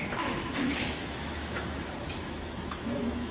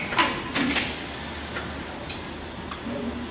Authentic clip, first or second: second